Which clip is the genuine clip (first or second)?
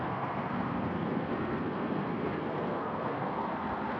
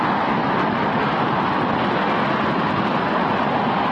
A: second